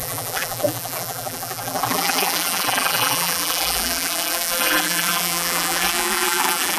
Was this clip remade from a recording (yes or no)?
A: yes